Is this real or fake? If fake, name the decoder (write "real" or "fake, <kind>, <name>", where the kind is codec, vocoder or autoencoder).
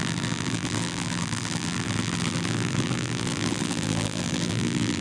fake, vocoder, BigVGAN v2